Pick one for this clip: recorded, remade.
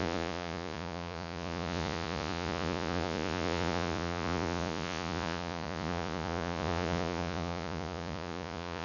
remade